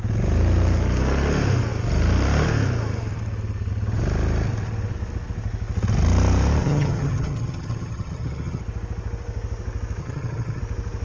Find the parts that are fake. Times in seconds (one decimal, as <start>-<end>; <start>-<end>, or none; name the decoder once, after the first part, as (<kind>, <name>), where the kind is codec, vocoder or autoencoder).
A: 6.6-8.6 (vocoder, HiFi-GAN); 10.0-10.6